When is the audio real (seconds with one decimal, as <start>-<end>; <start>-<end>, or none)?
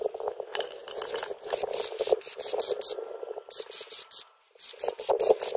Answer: 0.0-5.6